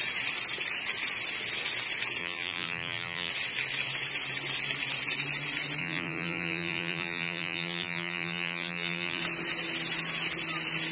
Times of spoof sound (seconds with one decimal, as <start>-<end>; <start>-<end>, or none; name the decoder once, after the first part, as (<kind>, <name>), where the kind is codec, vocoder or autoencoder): 2.2-3.3 (vocoder, BigVGAN v2); 5.8-9.2